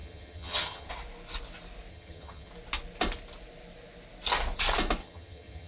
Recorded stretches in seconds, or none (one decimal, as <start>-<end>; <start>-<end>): 0.9-1.9; 2.5-5.0